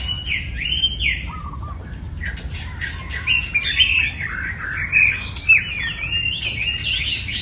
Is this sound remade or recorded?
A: recorded